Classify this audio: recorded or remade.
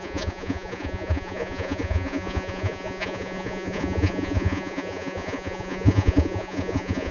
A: remade